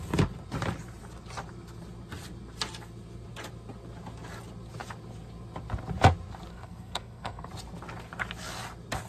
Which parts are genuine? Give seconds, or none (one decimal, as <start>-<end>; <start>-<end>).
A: 0.0-6.5; 7.5-9.1